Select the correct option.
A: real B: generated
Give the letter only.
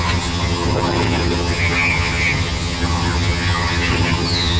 B